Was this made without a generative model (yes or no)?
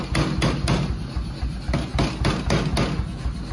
yes